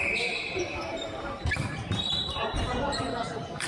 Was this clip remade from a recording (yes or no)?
yes